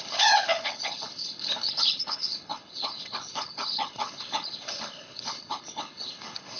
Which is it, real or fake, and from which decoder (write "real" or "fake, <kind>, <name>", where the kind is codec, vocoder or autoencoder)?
fake, codec, HILCodec